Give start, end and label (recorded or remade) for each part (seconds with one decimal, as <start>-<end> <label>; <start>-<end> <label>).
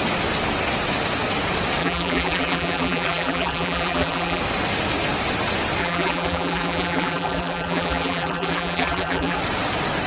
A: 0.0-1.8 recorded; 1.8-4.4 remade; 4.4-5.8 recorded; 5.8-9.4 remade; 9.4-10.1 recorded